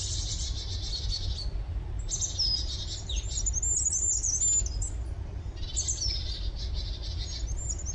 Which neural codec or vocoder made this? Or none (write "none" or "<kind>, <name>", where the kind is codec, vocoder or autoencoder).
none